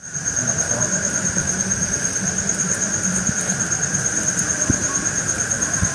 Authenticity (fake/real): real